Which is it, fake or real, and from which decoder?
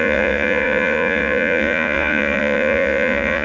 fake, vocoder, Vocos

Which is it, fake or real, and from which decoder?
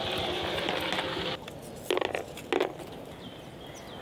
real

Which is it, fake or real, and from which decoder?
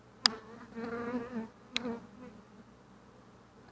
real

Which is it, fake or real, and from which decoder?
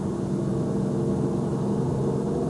real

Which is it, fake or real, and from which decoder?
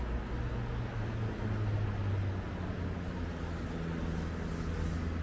real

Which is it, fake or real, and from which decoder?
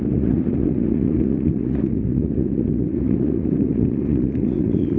fake, vocoder, Vocos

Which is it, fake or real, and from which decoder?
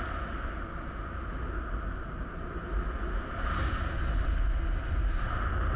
real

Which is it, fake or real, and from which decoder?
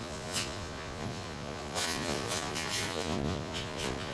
fake, vocoder, Vocos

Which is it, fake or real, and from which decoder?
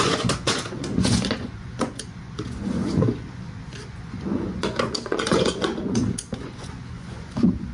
fake, vocoder, Vocos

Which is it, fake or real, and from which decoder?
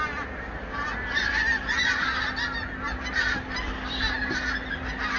real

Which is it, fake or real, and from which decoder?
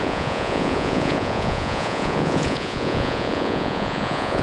fake, vocoder, Vocos